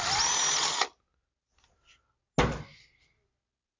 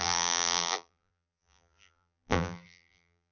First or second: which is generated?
second